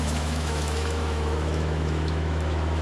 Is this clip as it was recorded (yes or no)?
no